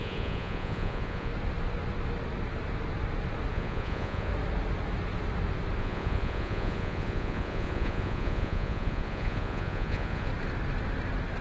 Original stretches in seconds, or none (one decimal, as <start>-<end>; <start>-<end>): 1.3-3.5; 4.3-5.8; 10.3-11.4